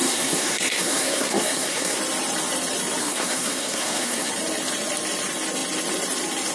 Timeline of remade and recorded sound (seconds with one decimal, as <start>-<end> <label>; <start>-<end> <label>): 0.0-2.0 remade; 2.0-3.0 recorded; 3.0-4.3 remade; 4.3-6.5 recorded